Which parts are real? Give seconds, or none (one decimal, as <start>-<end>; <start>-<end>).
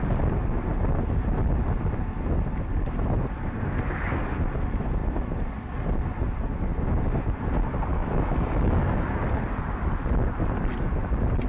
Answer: 0.0-7.9; 9.2-11.5